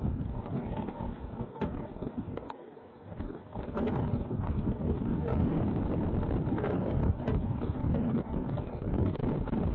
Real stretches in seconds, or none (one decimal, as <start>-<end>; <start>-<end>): 5.7-6.5; 9.2-9.7